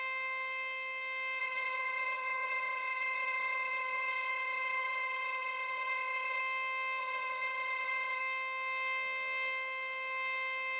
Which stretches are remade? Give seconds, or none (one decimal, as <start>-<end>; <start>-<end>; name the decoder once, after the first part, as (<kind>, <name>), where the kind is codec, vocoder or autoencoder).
1.4-6.4 (vocoder, HiFi-GAN); 7.0-8.2